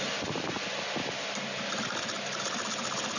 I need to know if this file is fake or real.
real